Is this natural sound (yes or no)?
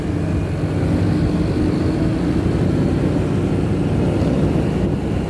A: yes